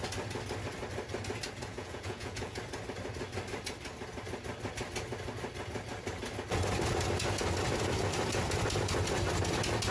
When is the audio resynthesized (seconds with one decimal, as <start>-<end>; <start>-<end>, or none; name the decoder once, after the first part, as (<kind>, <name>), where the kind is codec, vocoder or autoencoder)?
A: 1.6-2.6 (vocoder, Vocos)

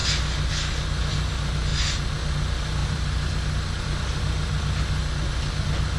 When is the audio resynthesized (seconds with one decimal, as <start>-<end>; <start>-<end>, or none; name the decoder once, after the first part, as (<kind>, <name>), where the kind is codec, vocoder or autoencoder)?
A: 2.8-5.0 (vocoder, BigVGAN v2)

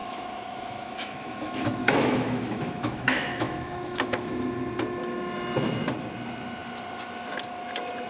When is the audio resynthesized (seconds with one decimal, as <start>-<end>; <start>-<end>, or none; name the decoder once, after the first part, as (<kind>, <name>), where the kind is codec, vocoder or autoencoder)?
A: 0.0-4.3 (autoencoder, DAC-VAE)

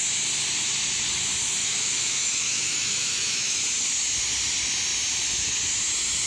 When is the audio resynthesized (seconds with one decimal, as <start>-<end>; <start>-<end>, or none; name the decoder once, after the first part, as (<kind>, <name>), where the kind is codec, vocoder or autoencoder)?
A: 1.6-3.6 (autoencoder, DAC-VAE)